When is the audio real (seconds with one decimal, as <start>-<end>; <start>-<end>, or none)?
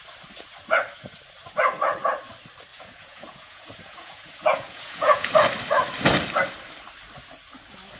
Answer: 0.0-2.7; 5.3-8.0